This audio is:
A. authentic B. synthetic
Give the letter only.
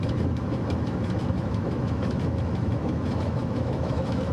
B